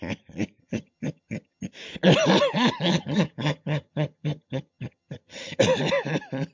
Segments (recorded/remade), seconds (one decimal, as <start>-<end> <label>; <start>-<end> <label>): 0.0-0.6 recorded; 0.6-1.7 remade; 1.7-2.9 recorded; 2.9-5.6 remade; 5.6-6.5 recorded